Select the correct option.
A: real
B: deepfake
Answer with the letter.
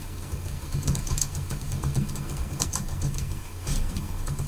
B